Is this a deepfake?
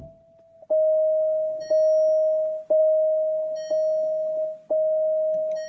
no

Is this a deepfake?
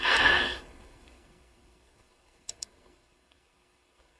yes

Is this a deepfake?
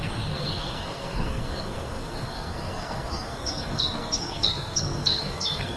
yes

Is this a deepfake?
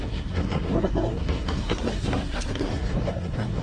yes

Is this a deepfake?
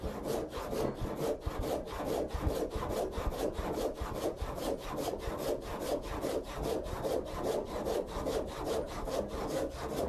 no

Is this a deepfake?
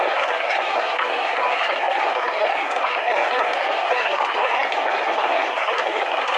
yes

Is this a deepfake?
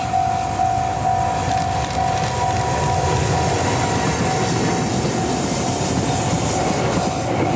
no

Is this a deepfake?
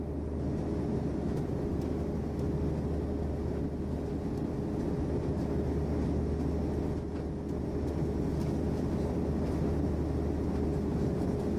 no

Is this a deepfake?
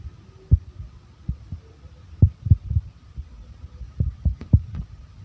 no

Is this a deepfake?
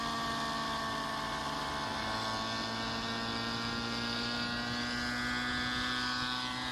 no